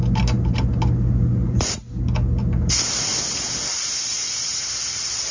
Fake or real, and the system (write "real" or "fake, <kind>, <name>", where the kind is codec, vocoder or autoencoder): real